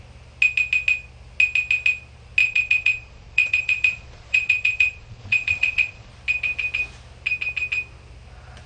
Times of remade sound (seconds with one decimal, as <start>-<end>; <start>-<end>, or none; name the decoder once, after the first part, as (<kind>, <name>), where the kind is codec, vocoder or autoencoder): 2.4-6.1 (vocoder, Vocos)